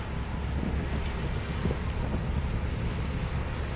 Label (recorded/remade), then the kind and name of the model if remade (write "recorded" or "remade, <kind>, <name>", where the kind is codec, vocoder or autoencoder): recorded